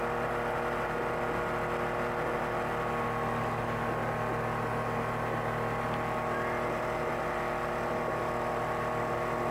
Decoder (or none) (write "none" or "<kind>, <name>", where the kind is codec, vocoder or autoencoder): none